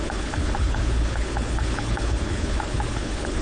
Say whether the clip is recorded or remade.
remade